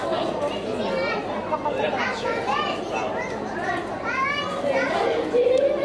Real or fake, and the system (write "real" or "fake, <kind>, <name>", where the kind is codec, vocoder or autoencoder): real